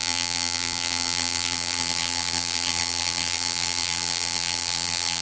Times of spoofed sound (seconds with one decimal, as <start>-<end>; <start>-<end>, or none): 0.0-5.2